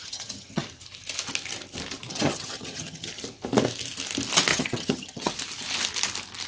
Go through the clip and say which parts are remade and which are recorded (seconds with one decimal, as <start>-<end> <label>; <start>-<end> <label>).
0.0-0.6 remade; 0.6-2.1 recorded; 2.1-3.1 remade; 3.1-4.5 recorded; 4.5-5.3 remade; 5.3-6.5 recorded